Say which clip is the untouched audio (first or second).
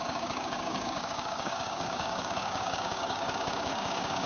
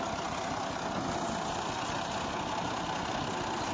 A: second